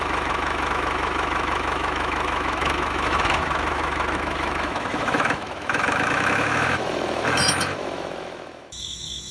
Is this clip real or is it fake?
fake